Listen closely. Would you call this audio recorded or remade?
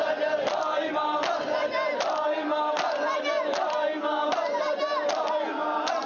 recorded